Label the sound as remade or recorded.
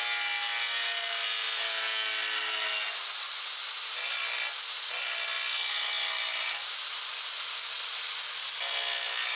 recorded